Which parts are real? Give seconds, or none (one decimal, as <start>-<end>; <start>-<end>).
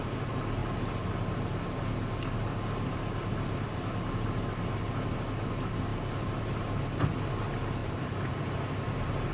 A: 0.0-5.9; 6.4-7.8; 8.3-9.3